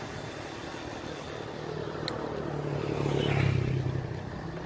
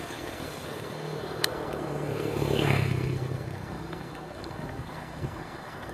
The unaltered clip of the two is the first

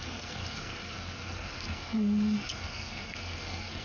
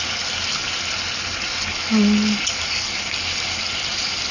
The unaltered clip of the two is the second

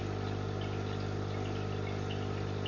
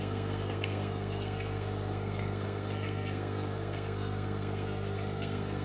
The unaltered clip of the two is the first